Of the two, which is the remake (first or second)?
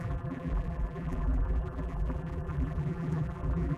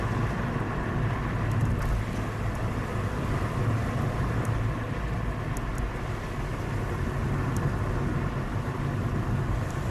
first